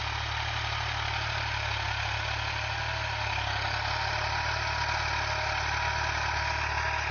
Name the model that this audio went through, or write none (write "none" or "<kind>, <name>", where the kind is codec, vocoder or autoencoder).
none